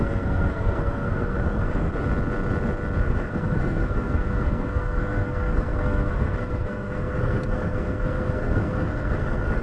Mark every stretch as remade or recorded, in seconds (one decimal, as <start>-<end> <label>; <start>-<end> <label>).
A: 0.0-1.9 remade; 1.9-3.0 recorded; 3.0-9.6 remade